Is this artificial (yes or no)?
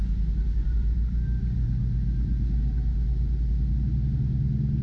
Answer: no